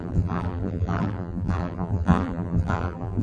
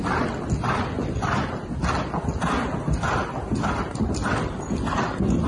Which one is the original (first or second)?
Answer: second